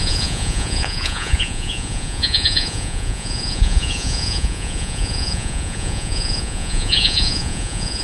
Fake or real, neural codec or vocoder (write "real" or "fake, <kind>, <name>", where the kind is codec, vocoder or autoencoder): fake, vocoder, Vocos